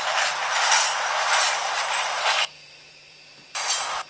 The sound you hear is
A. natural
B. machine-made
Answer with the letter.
B